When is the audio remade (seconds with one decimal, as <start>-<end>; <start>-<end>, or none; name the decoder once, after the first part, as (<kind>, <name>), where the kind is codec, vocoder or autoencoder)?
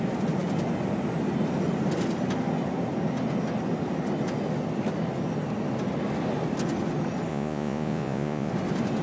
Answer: 7.3-8.5 (vocoder, Vocos)